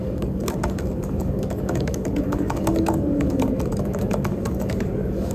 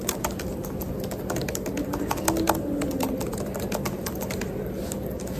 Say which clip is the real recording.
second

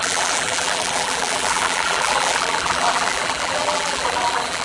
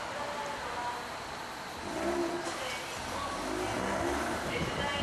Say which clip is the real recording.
second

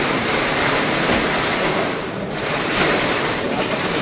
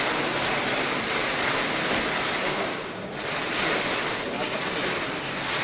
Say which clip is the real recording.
second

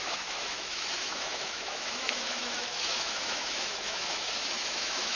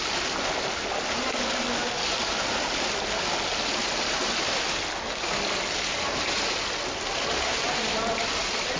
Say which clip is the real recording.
second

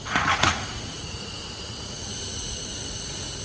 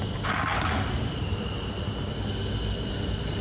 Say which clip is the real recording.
second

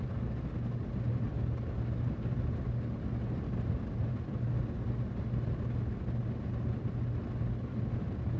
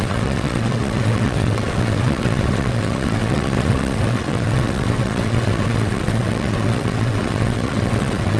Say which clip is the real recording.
first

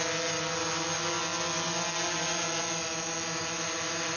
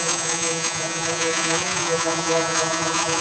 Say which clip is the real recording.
first